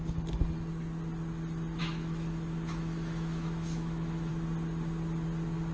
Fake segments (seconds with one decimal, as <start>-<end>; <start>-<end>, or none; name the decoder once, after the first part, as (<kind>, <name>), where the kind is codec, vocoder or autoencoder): 1.8-4.3 (autoencoder, DAC-VAE)

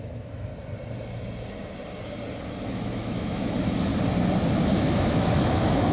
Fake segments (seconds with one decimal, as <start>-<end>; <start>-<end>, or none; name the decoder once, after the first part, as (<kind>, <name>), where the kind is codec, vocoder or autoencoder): 0.0-0.5 (autoencoder, DAC-VAE); 2.7-3.9; 4.5-5.9

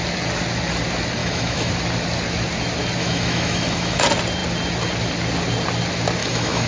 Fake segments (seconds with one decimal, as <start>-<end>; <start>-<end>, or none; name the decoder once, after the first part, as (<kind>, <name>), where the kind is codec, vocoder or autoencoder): 1.2-1.7 (autoencoder, DAC-VAE); 3.0-4.0; 6.2-6.7

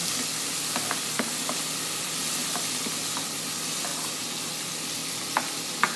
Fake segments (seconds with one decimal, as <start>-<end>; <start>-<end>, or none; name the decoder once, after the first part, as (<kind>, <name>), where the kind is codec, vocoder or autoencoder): none

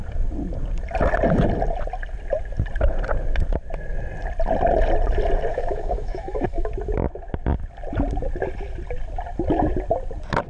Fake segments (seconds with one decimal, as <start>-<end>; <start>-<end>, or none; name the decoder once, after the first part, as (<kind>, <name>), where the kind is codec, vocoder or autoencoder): 5.5-6.7 (autoencoder, DAC-VAE)

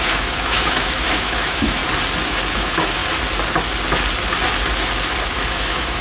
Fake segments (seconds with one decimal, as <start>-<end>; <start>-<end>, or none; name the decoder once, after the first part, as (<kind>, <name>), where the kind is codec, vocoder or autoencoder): 0.0-1.8 (autoencoder, DAC-VAE); 2.5-3.0; 5.5-6.0

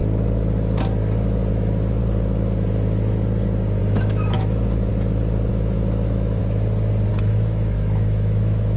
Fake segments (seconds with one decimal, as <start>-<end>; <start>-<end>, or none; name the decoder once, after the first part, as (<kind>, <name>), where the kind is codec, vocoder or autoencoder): 1.5-2.0 (autoencoder, DAC-VAE); 3.8-4.9; 5.5-6.4; 7.1-8.8

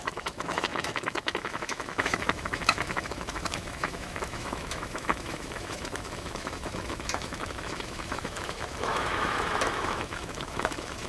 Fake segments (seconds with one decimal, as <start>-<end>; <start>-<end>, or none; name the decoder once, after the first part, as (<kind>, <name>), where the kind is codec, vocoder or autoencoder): 0.0-11.1 (autoencoder, DAC-VAE)